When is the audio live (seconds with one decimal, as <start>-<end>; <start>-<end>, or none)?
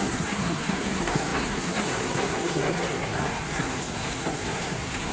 none